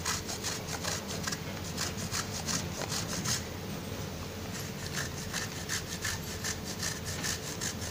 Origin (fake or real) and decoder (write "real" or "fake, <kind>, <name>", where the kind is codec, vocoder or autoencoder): real